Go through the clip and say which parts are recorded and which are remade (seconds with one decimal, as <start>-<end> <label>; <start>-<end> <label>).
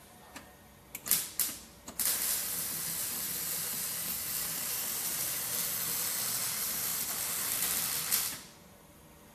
0.0-9.3 recorded